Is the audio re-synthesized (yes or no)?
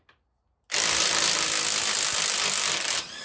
no